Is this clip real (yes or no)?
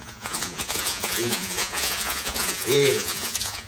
no